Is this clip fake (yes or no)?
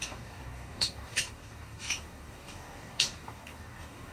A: yes